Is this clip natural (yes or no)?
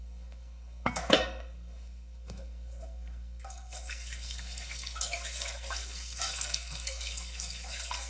no